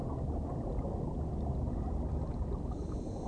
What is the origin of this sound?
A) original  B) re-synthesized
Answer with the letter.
A